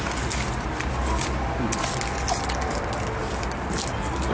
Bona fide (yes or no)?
yes